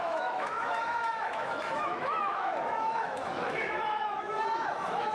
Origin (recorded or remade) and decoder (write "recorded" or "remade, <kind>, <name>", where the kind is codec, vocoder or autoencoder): remade, autoencoder, DAC-VAE